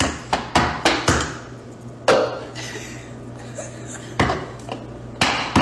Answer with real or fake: real